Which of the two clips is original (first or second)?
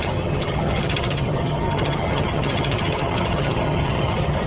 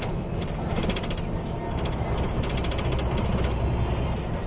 second